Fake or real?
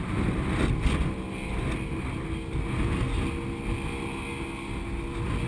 real